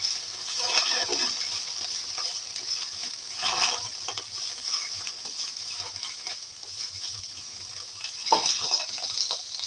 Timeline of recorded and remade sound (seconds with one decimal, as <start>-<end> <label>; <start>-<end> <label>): 0.0-1.1 remade; 1.1-2.8 recorded; 2.8-3.9 remade; 3.9-4.5 recorded; 4.5-9.7 remade